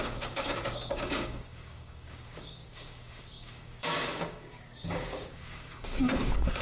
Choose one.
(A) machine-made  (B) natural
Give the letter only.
A